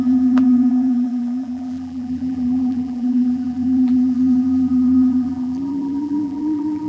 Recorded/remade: remade